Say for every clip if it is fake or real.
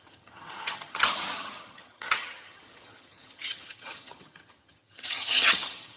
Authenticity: fake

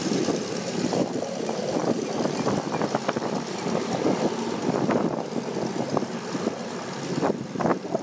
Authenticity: real